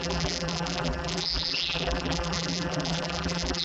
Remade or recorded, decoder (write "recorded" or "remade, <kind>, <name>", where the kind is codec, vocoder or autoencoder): remade, vocoder, BigVGAN v2